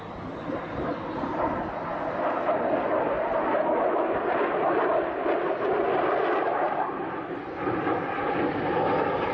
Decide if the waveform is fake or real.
real